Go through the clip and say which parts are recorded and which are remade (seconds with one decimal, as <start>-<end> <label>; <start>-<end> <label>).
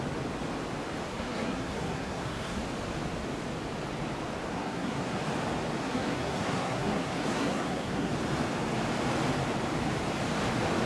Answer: 0.0-1.1 recorded; 1.1-2.6 remade; 2.6-4.5 recorded; 4.5-5.2 remade; 5.2-5.8 recorded; 5.8-8.1 remade; 8.1-10.9 recorded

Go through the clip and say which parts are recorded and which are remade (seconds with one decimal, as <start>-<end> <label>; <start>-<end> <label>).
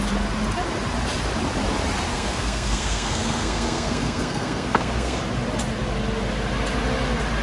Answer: 0.0-2.1 recorded; 2.1-5.2 remade; 5.2-7.4 recorded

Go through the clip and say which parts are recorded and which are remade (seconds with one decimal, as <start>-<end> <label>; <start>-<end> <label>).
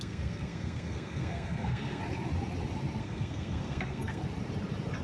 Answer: 0.0-2.0 remade; 2.0-3.0 recorded; 3.0-4.2 remade; 4.2-5.0 recorded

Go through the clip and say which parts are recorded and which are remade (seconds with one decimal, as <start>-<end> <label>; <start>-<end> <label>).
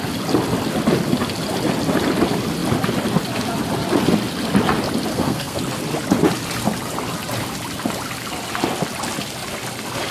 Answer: 0.0-5.1 recorded; 5.1-5.6 remade; 5.6-10.1 recorded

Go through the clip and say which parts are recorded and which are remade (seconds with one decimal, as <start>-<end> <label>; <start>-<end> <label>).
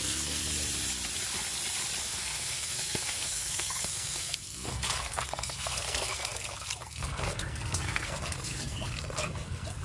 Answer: 0.0-0.4 remade; 0.4-2.0 recorded; 2.0-9.8 remade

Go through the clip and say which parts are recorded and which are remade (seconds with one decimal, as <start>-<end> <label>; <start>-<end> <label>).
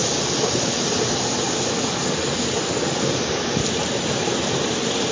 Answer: 0.0-5.1 recorded